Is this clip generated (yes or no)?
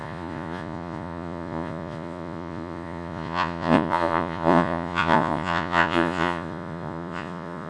yes